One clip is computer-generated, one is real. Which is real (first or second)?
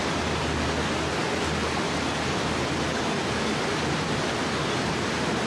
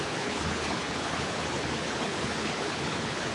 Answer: first